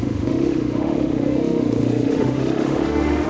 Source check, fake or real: fake